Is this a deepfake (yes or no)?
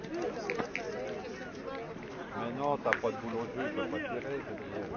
no